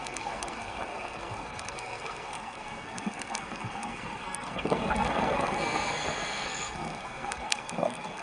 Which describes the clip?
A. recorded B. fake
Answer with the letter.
B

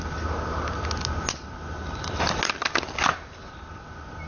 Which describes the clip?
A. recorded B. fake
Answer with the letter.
A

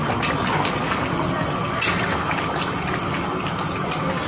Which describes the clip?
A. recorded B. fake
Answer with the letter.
A